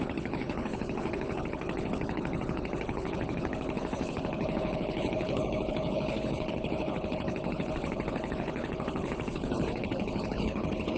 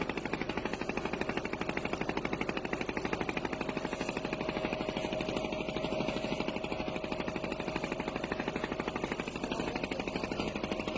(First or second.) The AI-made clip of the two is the first